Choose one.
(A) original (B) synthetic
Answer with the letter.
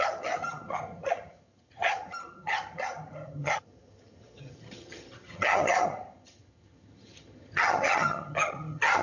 B